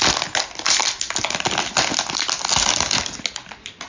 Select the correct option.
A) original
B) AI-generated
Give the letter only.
A